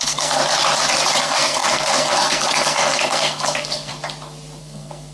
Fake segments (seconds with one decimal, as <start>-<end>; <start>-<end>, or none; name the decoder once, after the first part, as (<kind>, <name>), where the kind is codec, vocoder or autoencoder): 0.0-0.4 (codec, SNAC); 1.2-3.9; 4.6-5.1

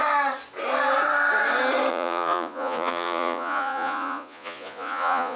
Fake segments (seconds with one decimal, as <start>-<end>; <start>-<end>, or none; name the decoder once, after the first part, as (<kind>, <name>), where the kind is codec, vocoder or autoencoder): 1.9-5.4 (vocoder, Vocos)

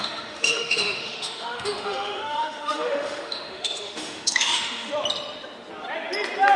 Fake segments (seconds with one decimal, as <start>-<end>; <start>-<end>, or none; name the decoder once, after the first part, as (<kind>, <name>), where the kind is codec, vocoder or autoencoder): 0.0-4.9 (autoencoder, DAC-VAE)

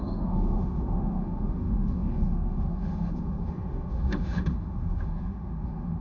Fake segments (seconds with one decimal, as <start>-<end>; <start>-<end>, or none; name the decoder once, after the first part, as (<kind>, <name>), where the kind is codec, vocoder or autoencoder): 0.0-6.0 (autoencoder, DAC-VAE)

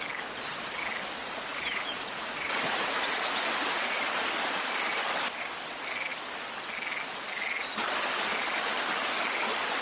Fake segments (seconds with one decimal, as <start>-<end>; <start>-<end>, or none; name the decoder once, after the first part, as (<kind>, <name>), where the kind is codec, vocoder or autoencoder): 1.2-4.0 (vocoder, Vocos)

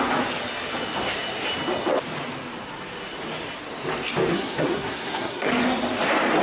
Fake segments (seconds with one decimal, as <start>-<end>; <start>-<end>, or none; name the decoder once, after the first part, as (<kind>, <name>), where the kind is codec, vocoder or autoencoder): 4.3-5.5 (codec, SNAC)

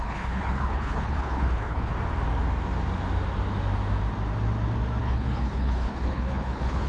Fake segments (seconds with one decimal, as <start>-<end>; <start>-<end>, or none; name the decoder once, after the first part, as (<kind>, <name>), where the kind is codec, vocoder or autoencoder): 0.0-1.9 (codec, HILCodec); 5.0-6.9